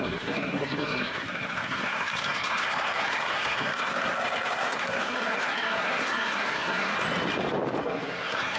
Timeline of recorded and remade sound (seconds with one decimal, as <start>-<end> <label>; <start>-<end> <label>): 0.0-6.9 remade; 6.9-7.8 recorded; 7.8-8.6 remade